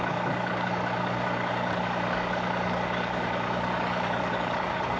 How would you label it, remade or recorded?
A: remade